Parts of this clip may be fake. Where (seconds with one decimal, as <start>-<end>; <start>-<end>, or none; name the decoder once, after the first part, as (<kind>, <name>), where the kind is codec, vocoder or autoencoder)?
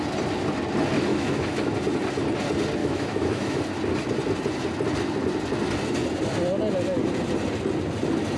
1.1-1.7 (autoencoder, DAC-VAE); 2.8-3.6